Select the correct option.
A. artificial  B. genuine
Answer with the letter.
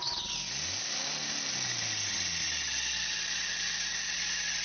B